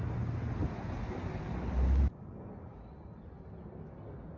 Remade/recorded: recorded